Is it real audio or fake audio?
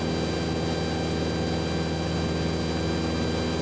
real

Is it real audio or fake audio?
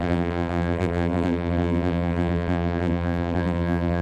fake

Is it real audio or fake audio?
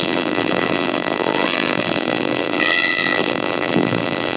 fake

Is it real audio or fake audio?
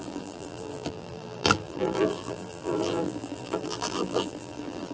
fake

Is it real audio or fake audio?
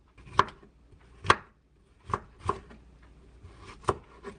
real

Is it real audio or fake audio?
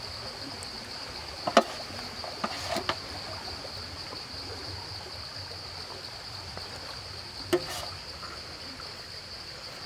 real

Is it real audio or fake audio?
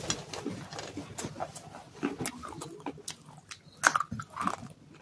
real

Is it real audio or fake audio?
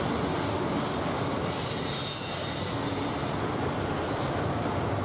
real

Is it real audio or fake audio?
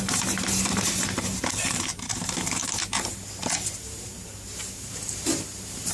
fake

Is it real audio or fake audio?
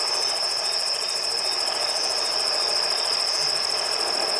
real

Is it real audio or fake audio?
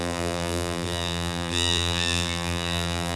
fake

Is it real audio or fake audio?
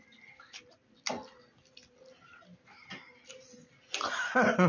real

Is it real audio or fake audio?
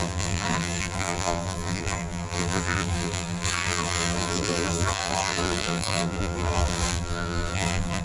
fake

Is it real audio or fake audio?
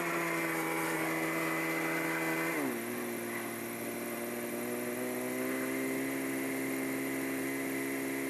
real